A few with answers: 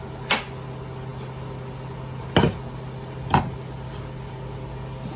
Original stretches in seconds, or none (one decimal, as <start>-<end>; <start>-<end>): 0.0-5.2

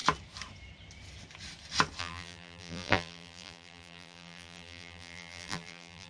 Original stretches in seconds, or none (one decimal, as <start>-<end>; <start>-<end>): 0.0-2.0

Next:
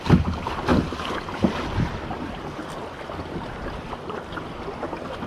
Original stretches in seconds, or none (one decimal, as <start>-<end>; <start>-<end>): 0.0-0.7; 3.9-5.3

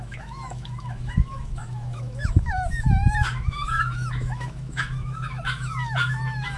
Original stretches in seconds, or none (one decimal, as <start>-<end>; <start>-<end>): none

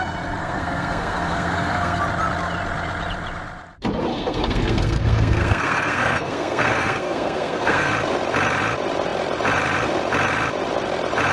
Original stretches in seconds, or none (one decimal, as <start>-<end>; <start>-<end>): 0.0-0.4; 2.0-4.1; 7.9-11.3